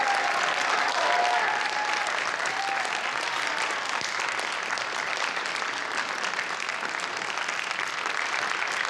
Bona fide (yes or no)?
yes